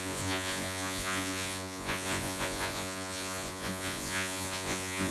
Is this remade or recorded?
remade